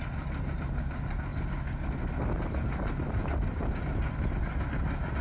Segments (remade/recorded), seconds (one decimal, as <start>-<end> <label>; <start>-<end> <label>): 0.0-5.2 recorded